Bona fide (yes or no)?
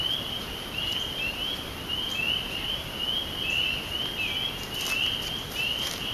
yes